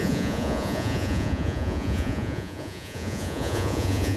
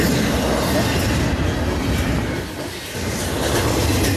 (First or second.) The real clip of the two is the second